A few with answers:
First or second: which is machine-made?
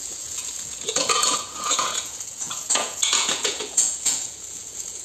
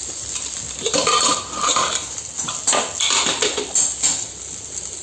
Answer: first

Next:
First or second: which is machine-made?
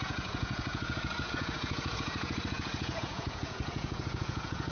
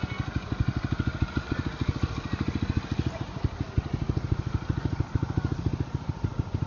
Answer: first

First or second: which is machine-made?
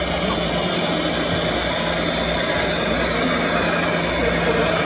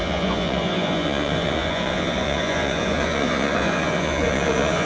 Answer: second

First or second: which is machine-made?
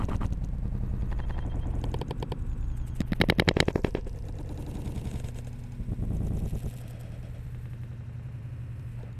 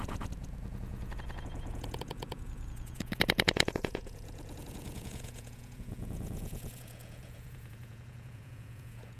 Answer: second